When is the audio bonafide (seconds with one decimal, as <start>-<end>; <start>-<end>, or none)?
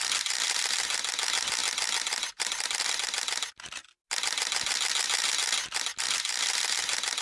0.0-7.2